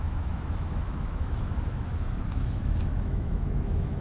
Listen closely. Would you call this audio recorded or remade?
remade